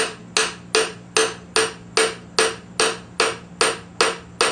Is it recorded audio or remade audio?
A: recorded